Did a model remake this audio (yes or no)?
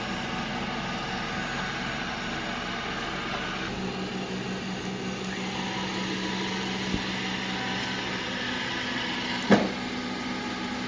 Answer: no